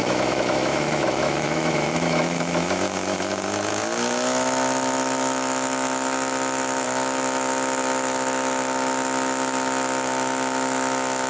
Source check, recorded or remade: remade